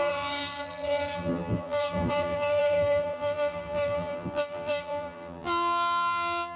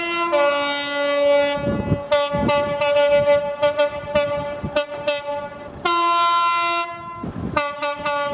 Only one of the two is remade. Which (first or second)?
first